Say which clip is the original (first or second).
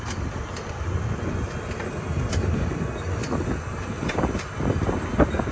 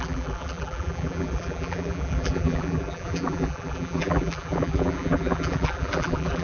first